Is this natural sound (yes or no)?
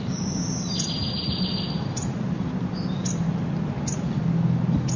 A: yes